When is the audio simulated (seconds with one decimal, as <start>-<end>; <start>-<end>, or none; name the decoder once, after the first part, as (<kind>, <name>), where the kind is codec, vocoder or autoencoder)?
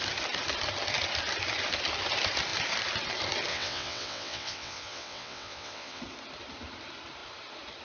3.5-6.0 (vocoder, WaveNeXt)